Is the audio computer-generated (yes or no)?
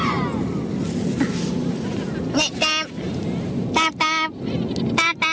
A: no